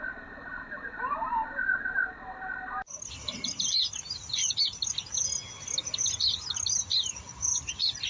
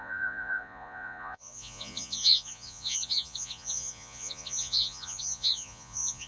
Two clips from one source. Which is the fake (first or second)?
second